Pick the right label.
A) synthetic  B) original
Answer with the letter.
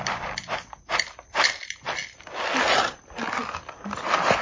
B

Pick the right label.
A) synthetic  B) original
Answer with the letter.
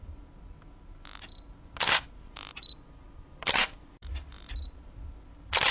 B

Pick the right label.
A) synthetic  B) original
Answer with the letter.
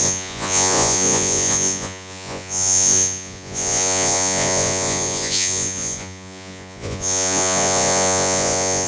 A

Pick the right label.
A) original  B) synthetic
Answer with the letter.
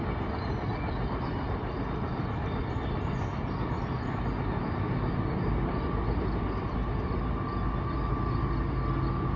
A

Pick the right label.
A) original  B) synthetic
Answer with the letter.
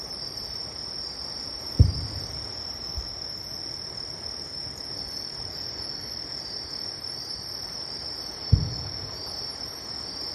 A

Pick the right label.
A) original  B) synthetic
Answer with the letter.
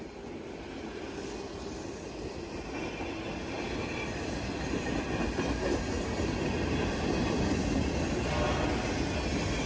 A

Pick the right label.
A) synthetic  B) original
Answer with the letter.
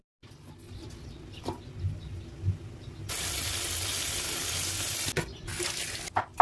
B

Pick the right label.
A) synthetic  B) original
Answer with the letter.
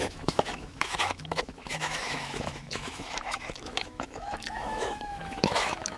A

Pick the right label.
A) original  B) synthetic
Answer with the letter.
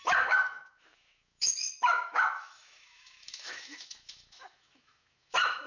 B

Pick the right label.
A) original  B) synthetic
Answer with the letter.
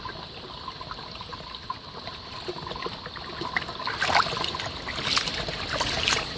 A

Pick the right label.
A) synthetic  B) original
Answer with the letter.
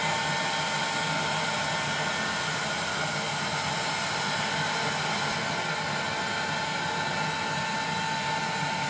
B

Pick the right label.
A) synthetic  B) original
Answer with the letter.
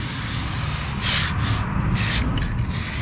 B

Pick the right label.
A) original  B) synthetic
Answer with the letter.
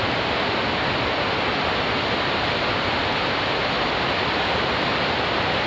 A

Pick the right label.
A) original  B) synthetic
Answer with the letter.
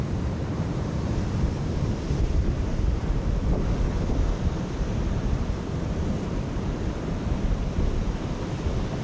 A